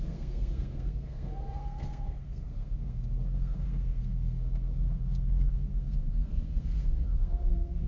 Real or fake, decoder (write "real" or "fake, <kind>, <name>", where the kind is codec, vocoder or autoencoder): fake, codec, SNAC